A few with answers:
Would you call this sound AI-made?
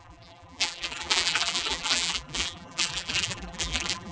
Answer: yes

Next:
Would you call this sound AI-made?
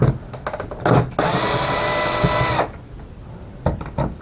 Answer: no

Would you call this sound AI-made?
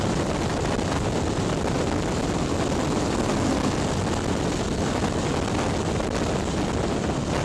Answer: no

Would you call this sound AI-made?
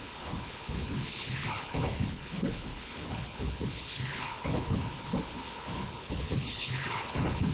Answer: yes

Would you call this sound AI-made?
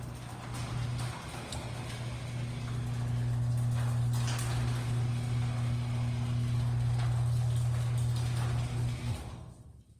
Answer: no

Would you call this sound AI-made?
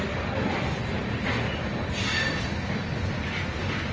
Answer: no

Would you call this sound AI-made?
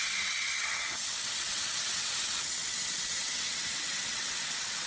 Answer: yes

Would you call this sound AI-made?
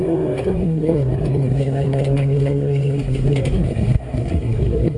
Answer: yes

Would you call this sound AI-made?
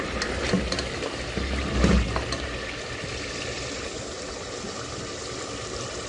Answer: no